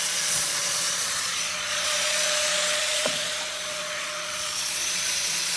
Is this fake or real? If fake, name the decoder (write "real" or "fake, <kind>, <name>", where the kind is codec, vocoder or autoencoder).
fake, vocoder, Vocos